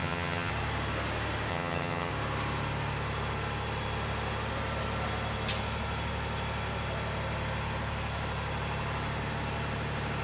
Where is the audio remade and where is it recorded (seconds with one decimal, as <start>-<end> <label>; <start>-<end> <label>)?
0.0-0.5 remade; 0.5-1.5 recorded; 1.5-2.1 remade; 2.1-10.2 recorded